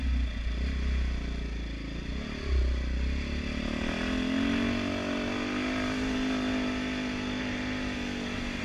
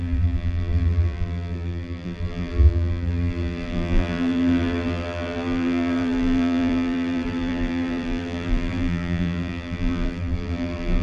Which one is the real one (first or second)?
first